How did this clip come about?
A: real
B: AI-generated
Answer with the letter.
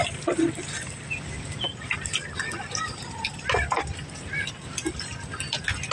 A